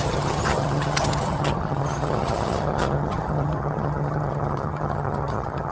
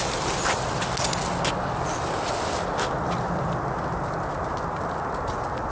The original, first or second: second